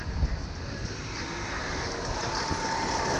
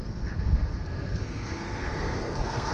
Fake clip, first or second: second